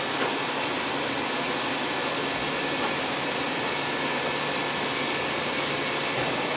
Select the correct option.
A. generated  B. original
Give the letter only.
B